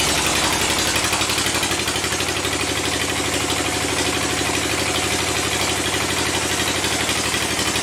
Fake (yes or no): no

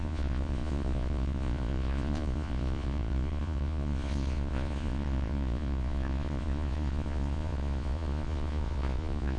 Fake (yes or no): yes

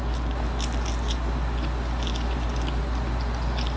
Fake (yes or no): no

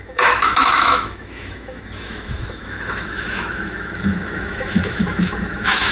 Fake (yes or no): yes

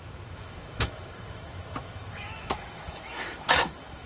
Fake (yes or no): yes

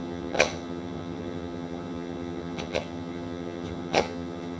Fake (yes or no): yes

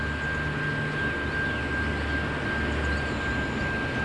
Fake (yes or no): no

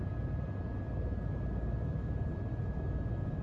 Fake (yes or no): no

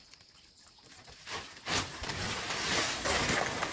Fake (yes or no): no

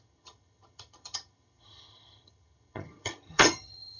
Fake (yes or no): yes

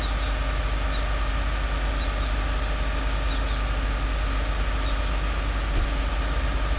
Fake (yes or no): no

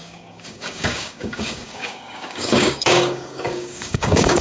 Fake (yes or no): yes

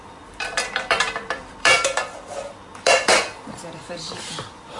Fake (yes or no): yes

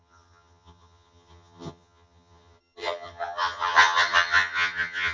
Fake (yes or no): yes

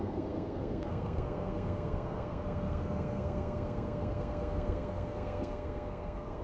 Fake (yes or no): yes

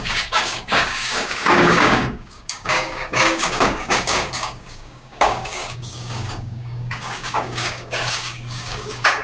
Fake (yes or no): yes